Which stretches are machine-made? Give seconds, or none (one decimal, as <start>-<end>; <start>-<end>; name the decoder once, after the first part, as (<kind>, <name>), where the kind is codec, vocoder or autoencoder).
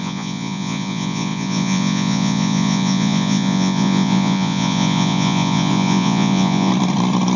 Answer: 0.0-6.7 (vocoder, Vocos)